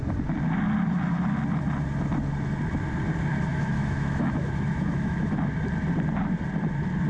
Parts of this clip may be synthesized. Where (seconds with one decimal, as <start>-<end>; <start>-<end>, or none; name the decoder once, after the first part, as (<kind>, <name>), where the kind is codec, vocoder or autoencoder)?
3.5-5.3 (autoencoder, DAC-VAE)